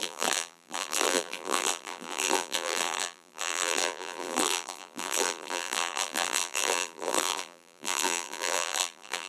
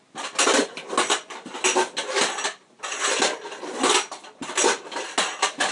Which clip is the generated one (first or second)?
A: first